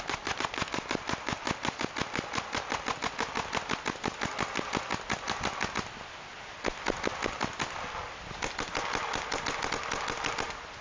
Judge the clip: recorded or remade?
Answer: recorded